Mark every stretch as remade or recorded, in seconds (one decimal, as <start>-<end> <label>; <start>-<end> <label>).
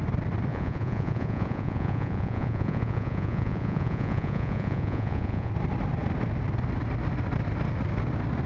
0.0-0.5 recorded; 0.5-5.5 remade; 5.5-8.5 recorded